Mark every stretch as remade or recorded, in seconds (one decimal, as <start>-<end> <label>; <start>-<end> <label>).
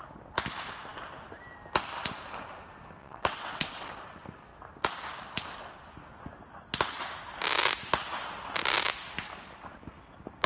0.0-3.0 recorded; 3.0-3.9 remade; 3.9-10.5 recorded